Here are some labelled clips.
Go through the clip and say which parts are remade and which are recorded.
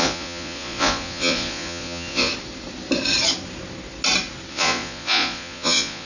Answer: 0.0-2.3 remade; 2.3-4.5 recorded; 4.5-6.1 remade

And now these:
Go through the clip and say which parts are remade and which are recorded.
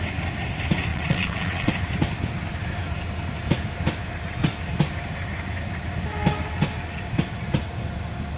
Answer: 0.0-0.9 recorded; 0.9-1.7 remade; 1.7-8.4 recorded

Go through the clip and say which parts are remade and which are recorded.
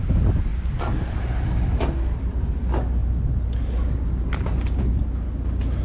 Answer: 0.0-5.8 recorded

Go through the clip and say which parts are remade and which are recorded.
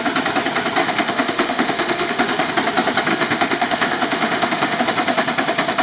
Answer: 0.0-0.8 recorded; 0.8-2.5 remade; 2.5-3.1 recorded; 3.1-4.8 remade; 4.8-5.8 recorded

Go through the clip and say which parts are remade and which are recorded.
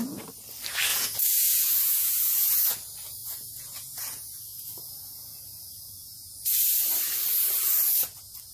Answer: 0.0-0.9 recorded; 0.9-2.6 remade; 2.6-3.2 recorded; 3.2-6.4 remade; 6.4-8.5 recorded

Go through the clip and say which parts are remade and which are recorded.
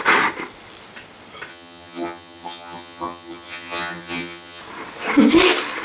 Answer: 0.0-1.5 recorded; 1.5-4.6 remade; 4.6-5.8 recorded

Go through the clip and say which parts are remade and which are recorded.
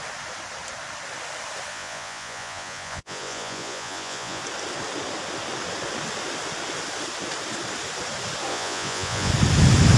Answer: 0.0-1.7 recorded; 1.7-4.4 remade; 4.4-8.5 recorded; 8.5-9.3 remade; 9.3-10.0 recorded